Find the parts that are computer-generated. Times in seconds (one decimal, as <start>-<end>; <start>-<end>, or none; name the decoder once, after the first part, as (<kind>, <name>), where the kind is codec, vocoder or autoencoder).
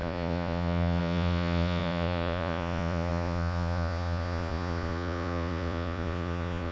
0.0-6.7 (vocoder, Vocos)